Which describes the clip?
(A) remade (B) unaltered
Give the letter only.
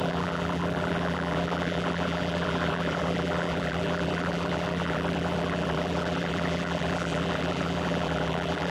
A